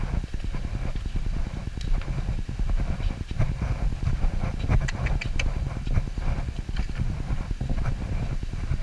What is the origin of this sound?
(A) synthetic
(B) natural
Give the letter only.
B